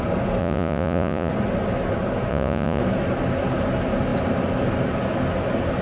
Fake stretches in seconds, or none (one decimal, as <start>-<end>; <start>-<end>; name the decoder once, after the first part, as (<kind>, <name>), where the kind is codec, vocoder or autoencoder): 0.4-1.3 (vocoder, Vocos); 2.3-2.8